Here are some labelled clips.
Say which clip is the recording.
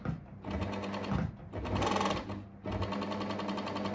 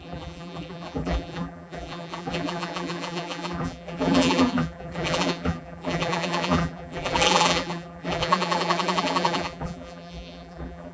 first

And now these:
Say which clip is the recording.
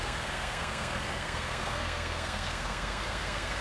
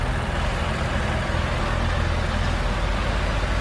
second